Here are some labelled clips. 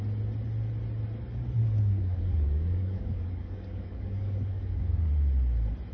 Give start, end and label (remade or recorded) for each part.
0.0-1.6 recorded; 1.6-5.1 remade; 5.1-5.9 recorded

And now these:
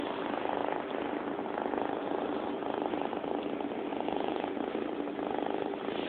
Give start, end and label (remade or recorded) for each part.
0.0-3.9 recorded; 3.9-4.5 remade; 4.5-6.1 recorded